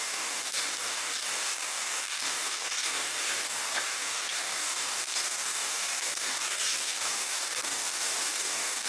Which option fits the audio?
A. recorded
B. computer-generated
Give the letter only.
B